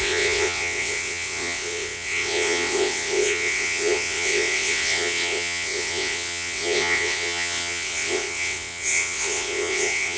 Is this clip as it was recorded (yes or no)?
no